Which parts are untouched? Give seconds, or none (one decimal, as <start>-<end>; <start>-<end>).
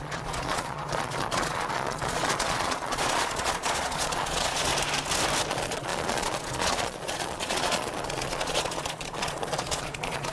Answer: 4.7-5.5